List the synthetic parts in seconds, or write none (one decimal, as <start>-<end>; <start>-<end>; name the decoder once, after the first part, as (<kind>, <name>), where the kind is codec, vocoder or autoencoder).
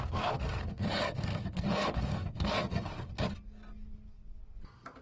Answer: 0.0-2.9 (codec, SNAC)